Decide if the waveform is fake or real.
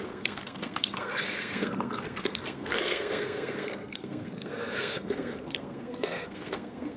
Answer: fake